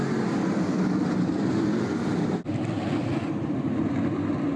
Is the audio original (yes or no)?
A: no